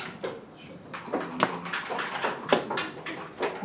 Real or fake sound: real